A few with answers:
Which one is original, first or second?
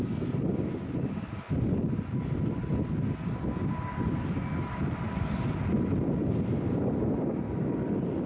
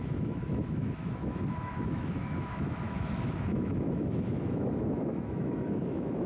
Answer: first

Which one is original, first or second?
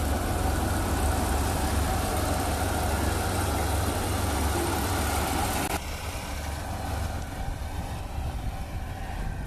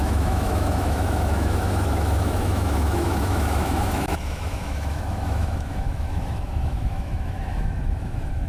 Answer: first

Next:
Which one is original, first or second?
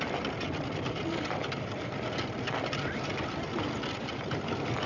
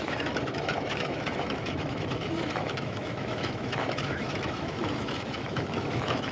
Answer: first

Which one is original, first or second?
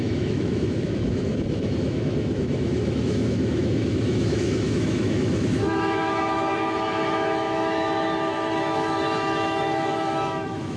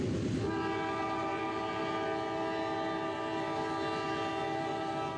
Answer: second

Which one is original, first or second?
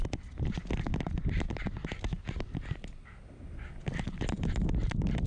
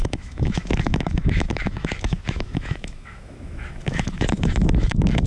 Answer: first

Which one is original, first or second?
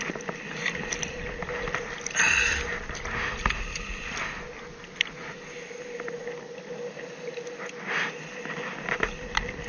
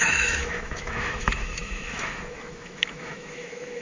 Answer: first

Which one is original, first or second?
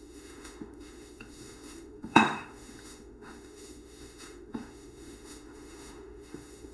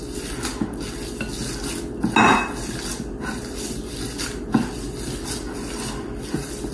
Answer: second